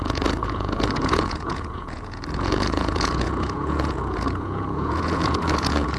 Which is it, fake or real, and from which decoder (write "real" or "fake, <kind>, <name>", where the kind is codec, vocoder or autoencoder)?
fake, vocoder, Vocos